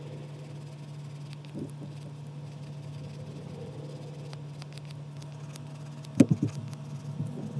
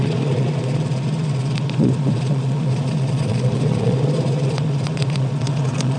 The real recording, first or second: first